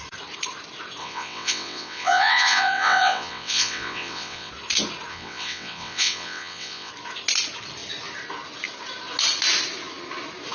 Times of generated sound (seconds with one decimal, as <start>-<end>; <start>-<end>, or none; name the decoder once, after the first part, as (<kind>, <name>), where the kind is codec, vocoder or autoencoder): 1.0-4.5 (vocoder, WaveNeXt); 5.1-6.9